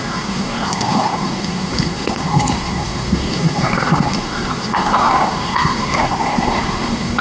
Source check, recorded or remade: remade